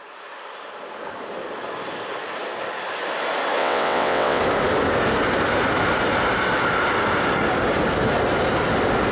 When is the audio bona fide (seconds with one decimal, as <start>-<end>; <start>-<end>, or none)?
0.0-3.6; 4.4-9.1